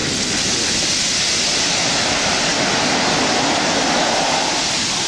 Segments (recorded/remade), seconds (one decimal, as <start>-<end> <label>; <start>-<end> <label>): 0.0-5.1 recorded